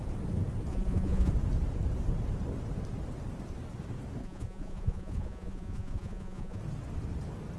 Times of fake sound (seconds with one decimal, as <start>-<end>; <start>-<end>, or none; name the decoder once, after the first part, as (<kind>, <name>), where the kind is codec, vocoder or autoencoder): 0.7-1.3 (vocoder, Vocos); 4.2-6.6